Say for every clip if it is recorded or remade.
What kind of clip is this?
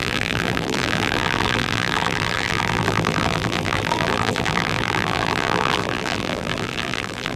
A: remade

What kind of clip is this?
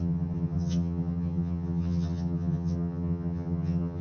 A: remade